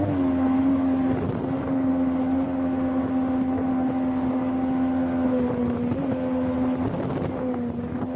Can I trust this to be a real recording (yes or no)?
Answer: yes